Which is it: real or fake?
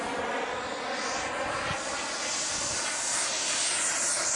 real